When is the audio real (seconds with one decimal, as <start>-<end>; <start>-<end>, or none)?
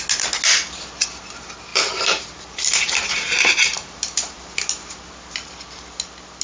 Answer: 0.0-1.7; 4.4-6.4